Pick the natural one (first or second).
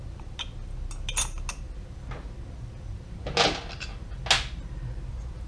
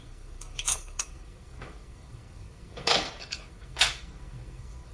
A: first